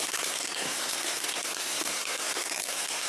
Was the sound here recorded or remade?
remade